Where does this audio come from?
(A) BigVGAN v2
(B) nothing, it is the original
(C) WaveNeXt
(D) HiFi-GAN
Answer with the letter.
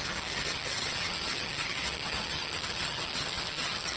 D